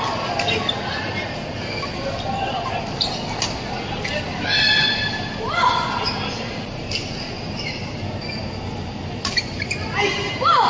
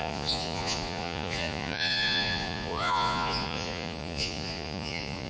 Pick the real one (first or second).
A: first